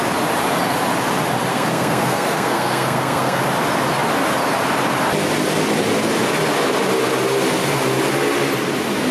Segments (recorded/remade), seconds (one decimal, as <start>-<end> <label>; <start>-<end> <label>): 0.0-1.5 recorded; 1.5-3.4 remade; 3.4-9.1 recorded